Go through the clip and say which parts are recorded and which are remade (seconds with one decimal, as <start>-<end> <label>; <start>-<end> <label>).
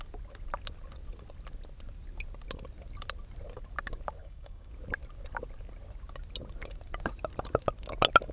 0.0-4.2 recorded; 4.2-4.7 remade; 4.7-8.3 recorded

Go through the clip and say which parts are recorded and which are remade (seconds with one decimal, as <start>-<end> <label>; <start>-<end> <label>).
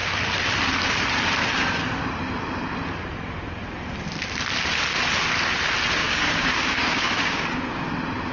0.0-6.0 recorded; 6.0-7.9 remade; 7.9-8.3 recorded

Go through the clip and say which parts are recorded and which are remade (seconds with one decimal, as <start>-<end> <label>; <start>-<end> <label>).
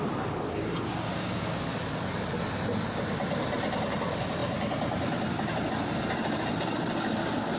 0.0-1.1 recorded; 1.1-1.6 remade; 1.6-7.6 recorded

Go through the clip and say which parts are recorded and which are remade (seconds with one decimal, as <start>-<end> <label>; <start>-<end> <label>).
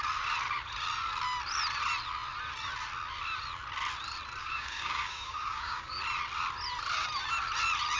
0.0-4.4 recorded; 4.4-5.9 remade; 5.9-8.0 recorded